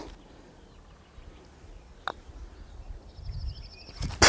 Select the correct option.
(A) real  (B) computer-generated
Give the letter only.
A